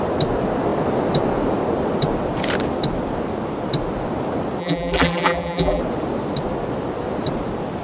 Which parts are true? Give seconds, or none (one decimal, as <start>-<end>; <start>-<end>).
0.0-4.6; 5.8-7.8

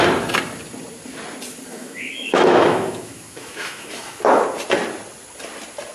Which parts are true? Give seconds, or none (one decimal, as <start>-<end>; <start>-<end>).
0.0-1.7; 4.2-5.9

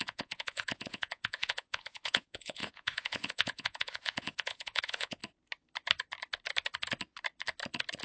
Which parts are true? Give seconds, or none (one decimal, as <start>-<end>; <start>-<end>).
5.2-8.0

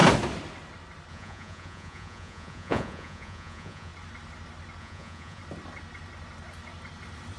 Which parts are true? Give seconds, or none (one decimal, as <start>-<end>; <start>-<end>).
0.0-1.1; 3.9-4.8; 5.4-7.4